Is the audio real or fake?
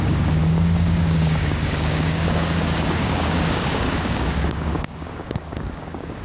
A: fake